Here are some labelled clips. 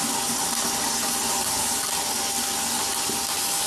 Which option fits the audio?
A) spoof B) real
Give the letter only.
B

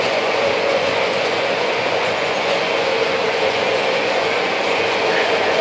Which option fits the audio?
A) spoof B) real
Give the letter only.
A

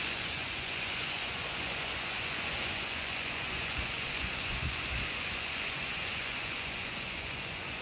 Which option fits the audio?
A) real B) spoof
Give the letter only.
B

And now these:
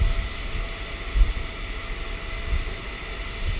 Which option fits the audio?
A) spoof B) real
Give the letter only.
B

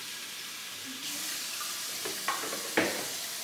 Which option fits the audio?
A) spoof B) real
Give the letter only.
B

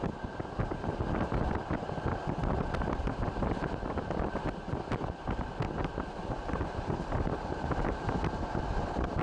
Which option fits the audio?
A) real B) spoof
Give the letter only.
A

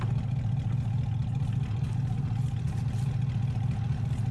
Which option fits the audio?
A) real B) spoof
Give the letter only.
A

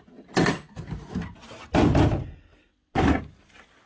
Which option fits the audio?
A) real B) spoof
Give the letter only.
A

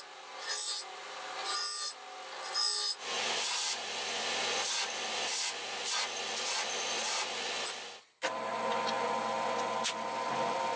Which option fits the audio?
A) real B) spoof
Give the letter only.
A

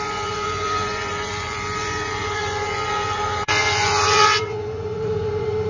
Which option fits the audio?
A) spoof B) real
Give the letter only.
A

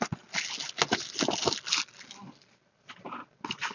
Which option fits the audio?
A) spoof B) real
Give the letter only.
B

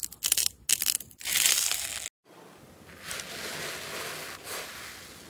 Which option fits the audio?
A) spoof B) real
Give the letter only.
B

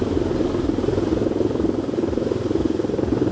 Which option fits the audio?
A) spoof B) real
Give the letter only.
B